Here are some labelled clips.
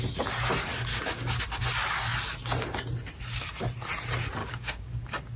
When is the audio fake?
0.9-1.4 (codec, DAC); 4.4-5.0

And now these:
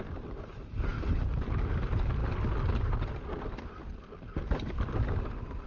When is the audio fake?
none

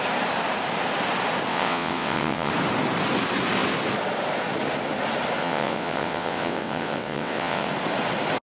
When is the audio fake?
1.5-2.5 (vocoder, WaveNeXt); 5.4-7.7

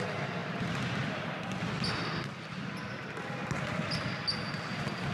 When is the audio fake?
none

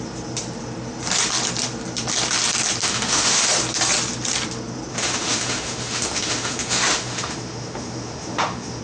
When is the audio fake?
2.8-3.4 (autoencoder, DAC-VAE); 4.9-8.8

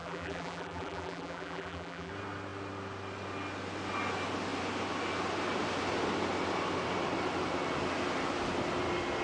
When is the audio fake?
0.0-2.1 (vocoder, BigVGAN v2)

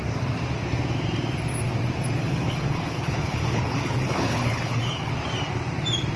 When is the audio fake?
2.2-5.1 (codec, HILCodec)